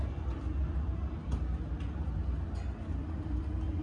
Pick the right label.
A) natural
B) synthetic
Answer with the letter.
A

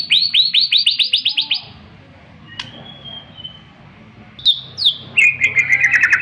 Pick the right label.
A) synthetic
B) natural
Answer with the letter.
B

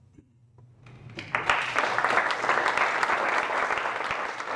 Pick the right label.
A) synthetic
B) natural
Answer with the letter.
B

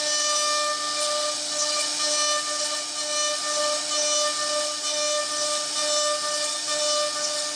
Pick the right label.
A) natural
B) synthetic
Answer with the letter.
A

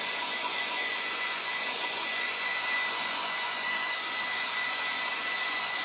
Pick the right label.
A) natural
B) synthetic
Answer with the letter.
B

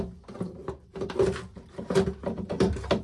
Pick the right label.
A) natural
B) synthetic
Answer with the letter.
A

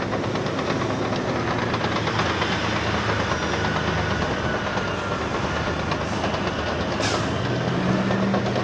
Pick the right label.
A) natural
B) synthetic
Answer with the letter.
A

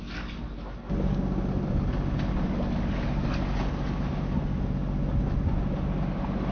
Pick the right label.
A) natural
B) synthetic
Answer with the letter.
A